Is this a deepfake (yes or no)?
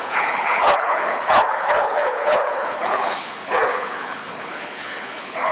yes